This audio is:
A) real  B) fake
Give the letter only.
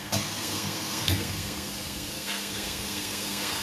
B